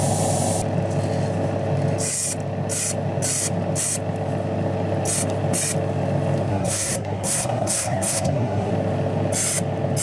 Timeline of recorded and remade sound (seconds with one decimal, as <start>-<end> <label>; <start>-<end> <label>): 0.0-6.5 recorded; 6.5-8.7 remade; 8.7-10.0 recorded